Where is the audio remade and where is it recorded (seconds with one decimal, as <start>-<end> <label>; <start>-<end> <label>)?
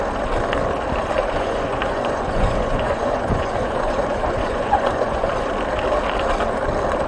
0.0-1.2 recorded; 1.2-5.5 remade; 5.5-7.1 recorded